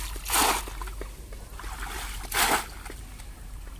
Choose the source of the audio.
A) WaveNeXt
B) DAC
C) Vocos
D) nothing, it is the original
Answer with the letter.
D